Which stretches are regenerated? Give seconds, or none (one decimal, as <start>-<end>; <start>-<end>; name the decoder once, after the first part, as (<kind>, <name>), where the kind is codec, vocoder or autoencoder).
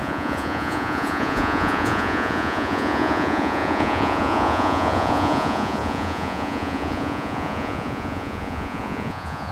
0.0-9.5 (vocoder, Vocos)